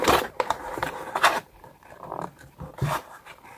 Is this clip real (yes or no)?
no